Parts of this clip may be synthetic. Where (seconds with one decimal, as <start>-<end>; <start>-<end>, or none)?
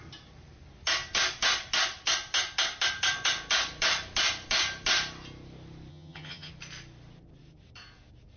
5.9-6.5